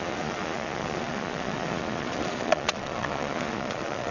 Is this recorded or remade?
remade